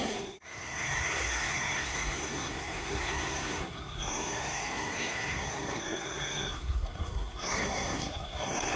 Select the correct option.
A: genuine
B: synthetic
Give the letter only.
B